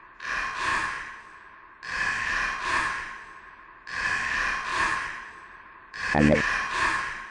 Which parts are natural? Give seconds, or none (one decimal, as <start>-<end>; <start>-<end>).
0.0-0.7; 1.5-4.7; 6.7-7.3